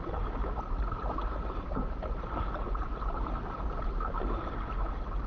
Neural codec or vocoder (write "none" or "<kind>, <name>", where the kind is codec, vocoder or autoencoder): none